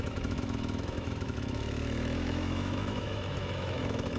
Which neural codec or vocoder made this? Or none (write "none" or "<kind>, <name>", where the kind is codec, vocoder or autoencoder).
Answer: autoencoder, DAC-VAE